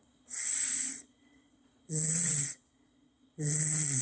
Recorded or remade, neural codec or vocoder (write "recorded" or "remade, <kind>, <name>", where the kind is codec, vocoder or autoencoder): remade, vocoder, Vocos